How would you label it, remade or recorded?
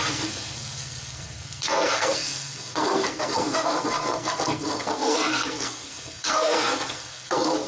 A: remade